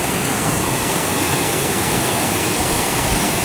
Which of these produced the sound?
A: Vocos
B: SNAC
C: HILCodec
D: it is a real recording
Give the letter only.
B